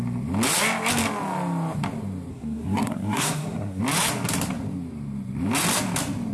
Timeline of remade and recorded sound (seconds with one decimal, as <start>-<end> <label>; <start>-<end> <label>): 0.0-2.3 recorded; 2.3-3.8 remade; 3.8-6.3 recorded